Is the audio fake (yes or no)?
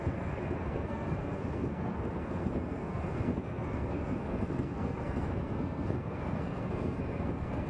yes